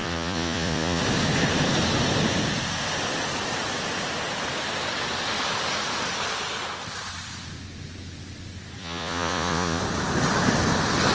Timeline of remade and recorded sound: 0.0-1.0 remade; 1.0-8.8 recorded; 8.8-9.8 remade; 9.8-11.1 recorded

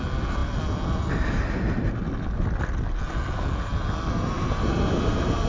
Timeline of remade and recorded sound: 0.0-5.5 recorded

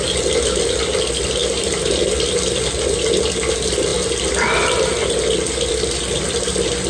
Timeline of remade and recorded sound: 0.0-6.9 recorded